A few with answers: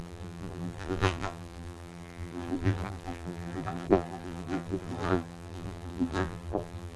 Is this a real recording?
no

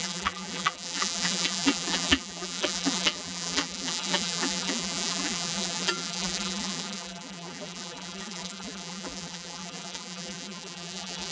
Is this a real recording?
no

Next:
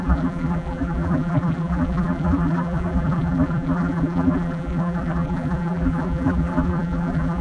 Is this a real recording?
no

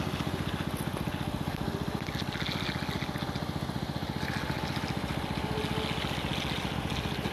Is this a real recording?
yes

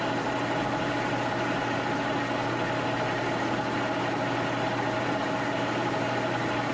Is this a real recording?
yes